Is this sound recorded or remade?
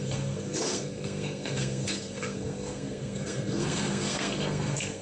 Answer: remade